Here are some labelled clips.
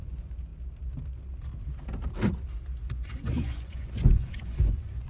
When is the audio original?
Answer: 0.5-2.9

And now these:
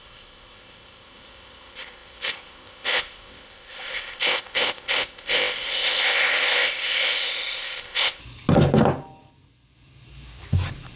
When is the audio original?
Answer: 8.2-11.0

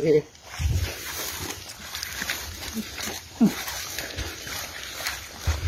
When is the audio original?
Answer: none

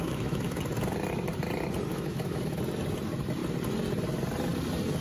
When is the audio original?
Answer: 0.6-1.9; 2.6-5.0

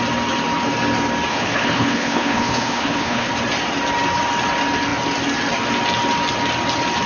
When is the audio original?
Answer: 0.0-1.3; 3.3-7.1

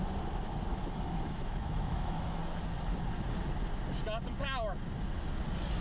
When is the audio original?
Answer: 0.0-0.7; 2.4-5.8